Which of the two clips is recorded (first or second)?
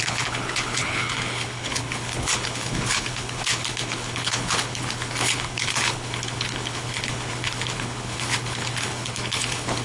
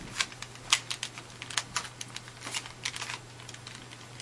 second